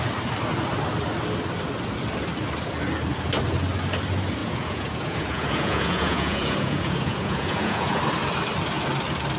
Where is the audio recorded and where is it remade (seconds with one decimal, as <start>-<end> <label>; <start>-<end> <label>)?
0.0-4.4 recorded; 4.4-8.0 remade; 8.0-9.4 recorded